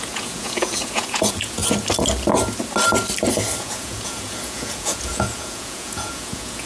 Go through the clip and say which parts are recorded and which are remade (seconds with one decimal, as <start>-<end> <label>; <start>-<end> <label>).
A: 0.0-1.6 remade; 1.6-3.6 recorded; 3.6-6.7 remade